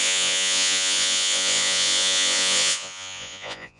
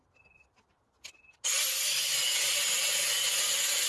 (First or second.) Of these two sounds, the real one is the second